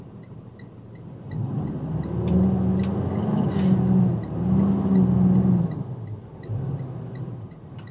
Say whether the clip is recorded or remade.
recorded